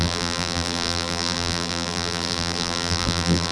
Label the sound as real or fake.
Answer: fake